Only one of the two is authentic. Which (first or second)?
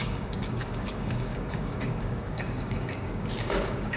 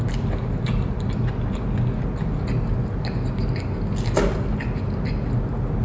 second